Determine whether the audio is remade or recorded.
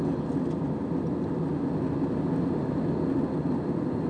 recorded